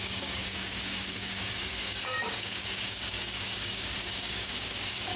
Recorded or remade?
remade